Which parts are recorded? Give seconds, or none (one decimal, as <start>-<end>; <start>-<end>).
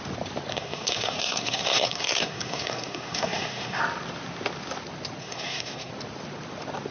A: 0.0-0.5; 3.8-5.2; 5.9-6.9